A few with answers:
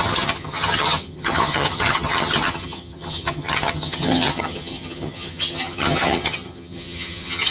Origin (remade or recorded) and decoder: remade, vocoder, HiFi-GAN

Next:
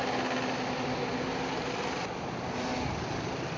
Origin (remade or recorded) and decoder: recorded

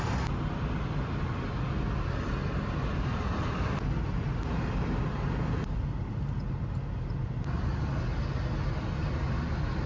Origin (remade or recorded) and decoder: recorded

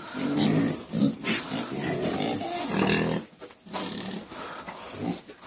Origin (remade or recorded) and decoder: recorded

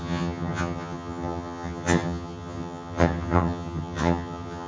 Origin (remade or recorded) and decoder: remade, vocoder, HiFi-GAN